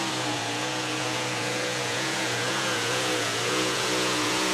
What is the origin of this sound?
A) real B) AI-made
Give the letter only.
B